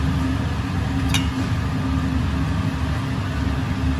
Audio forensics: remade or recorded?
recorded